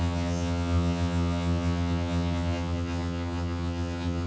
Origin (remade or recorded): remade